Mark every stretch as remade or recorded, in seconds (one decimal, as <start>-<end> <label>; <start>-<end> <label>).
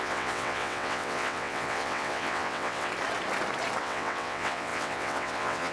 0.0-2.9 remade; 2.9-3.8 recorded; 3.8-5.7 remade